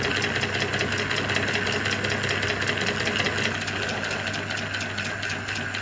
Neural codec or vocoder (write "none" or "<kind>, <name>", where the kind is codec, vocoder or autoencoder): none